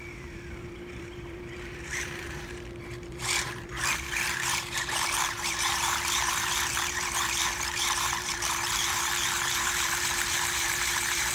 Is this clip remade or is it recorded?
remade